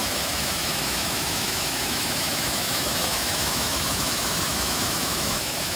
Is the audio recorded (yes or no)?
no